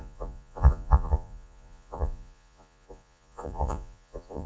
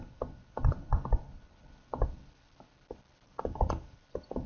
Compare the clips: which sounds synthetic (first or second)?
first